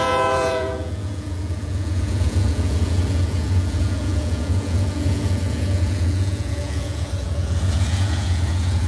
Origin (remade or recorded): remade